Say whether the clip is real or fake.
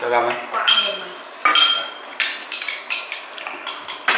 real